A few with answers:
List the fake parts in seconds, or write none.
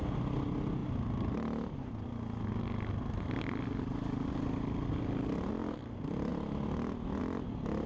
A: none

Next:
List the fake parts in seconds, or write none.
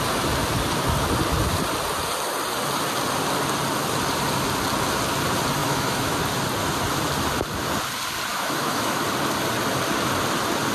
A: 5.6-6.2 (autoencoder, DAC-VAE); 8.3-9.0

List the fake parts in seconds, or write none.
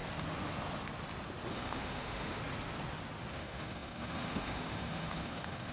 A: 1.5-2.4 (autoencoder, DAC-VAE); 3.3-5.7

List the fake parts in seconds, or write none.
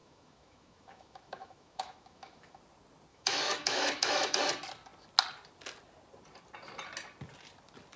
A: 0.0-2.6 (autoencoder, DAC-VAE); 3.1-4.4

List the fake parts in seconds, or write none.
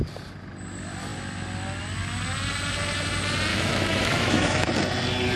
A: 3.5-4.7 (autoencoder, DAC-VAE)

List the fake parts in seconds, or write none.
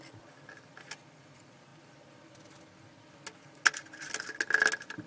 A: none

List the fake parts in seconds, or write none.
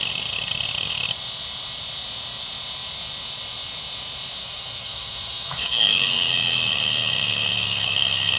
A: 4.4-8.4 (autoencoder, DAC-VAE)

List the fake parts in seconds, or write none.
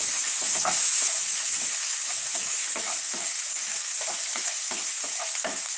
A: 0.0-5.8 (autoencoder, DAC-VAE)